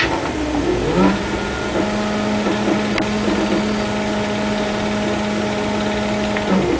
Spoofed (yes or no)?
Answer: no